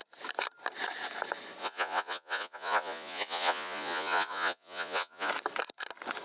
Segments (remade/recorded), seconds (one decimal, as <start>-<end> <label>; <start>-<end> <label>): 0.0-1.6 recorded; 1.6-5.3 remade; 5.3-6.2 recorded

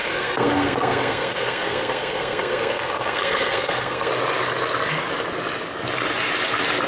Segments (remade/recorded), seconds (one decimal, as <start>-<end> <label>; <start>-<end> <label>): 0.0-4.1 remade; 4.1-6.9 recorded

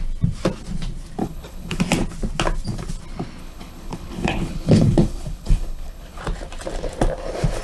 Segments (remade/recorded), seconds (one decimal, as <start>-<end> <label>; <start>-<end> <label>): 0.0-1.2 recorded; 1.2-1.8 remade; 1.8-3.4 recorded; 3.4-6.2 remade; 6.2-7.6 recorded

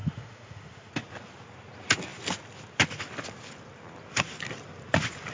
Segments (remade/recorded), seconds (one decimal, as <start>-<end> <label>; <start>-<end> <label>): 0.0-0.9 remade; 0.9-5.3 recorded

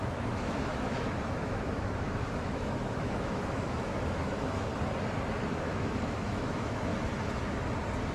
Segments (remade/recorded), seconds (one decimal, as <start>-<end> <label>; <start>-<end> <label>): 0.0-4.7 remade; 4.7-5.6 recorded; 5.6-6.9 remade; 6.9-8.1 recorded

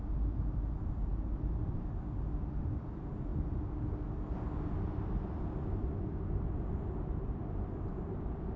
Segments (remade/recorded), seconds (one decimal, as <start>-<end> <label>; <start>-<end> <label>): 0.0-8.6 recorded

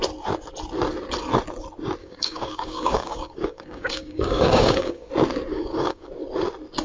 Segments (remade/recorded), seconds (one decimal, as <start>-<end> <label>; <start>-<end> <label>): 0.0-2.0 recorded; 2.0-5.1 remade; 5.1-5.5 recorded; 5.5-6.1 remade; 6.1-6.8 recorded

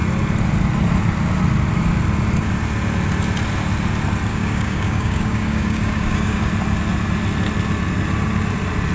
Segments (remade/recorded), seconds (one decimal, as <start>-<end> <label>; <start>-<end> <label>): 0.0-4.3 recorded; 4.3-6.5 remade; 6.5-8.9 recorded